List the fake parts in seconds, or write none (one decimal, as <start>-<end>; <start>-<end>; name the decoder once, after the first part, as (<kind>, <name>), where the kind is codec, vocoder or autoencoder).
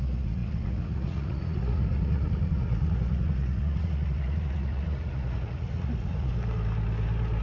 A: 0.0-6.3 (vocoder, Vocos)